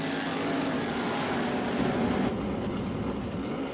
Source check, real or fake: real